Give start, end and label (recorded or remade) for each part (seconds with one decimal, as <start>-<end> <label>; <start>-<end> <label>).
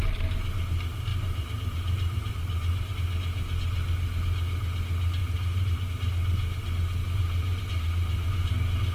0.0-1.1 recorded; 1.1-2.9 remade; 2.9-5.2 recorded; 5.2-5.9 remade; 5.9-7.0 recorded; 7.0-8.5 remade; 8.5-8.9 recorded